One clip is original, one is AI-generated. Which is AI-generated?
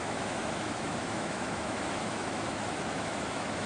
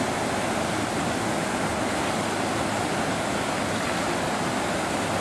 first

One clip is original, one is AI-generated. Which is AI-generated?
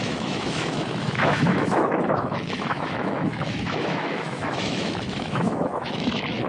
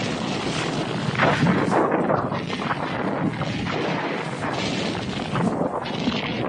first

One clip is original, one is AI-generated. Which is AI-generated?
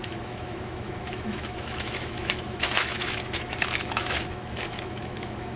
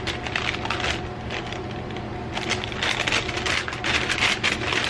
first